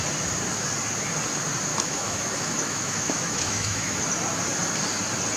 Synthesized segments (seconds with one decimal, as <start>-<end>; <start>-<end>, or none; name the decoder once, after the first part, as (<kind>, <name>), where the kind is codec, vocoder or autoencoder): 1.7-4.0 (autoencoder, DAC-VAE)